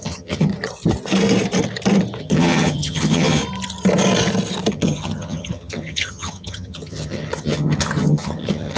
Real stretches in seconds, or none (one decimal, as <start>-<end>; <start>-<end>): 0.5-2.2; 3.4-4.7